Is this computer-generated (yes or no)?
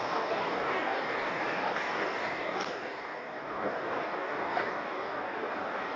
yes